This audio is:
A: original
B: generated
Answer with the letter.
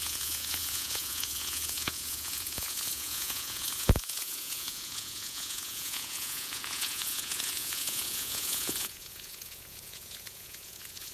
B